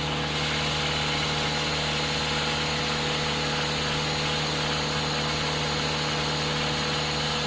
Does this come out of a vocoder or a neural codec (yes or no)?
no